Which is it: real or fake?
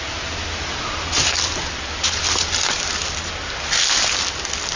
real